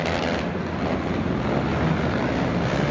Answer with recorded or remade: recorded